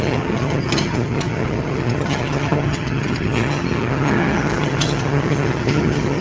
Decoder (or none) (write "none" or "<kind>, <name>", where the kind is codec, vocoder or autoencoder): vocoder, HiFi-GAN